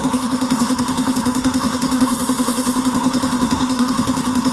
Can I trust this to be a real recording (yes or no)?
no